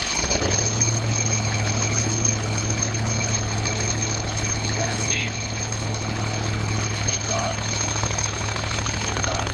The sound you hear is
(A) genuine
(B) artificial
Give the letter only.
B